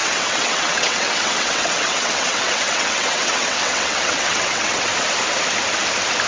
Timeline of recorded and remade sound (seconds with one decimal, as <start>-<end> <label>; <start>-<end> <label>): 0.0-4.9 remade; 4.9-6.3 recorded